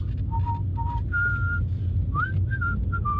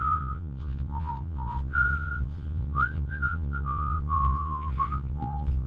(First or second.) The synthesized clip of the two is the second